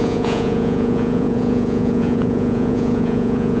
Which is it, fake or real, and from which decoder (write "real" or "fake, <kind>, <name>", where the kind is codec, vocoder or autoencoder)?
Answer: fake, vocoder, Vocos